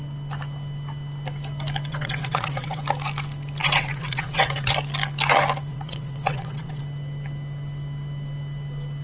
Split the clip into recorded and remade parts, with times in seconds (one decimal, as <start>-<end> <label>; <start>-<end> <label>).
0.0-1.9 recorded; 1.9-2.8 remade; 2.8-3.6 recorded; 3.6-4.7 remade; 4.7-5.7 recorded; 5.7-6.8 remade; 6.8-9.0 recorded